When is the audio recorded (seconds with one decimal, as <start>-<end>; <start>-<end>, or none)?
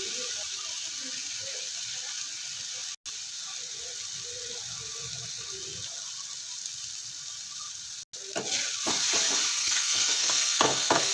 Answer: 0.0-9.6